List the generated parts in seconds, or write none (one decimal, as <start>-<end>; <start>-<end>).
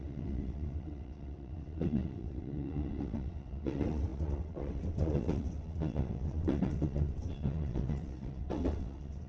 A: 0.0-9.3